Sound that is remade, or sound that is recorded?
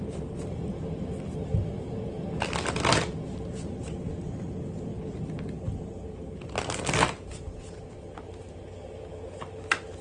recorded